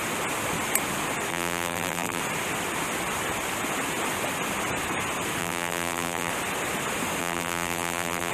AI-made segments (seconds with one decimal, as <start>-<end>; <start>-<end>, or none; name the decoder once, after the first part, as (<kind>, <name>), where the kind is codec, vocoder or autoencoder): 1.3-2.2 (vocoder, BigVGAN v2); 5.4-6.3; 7.2-8.3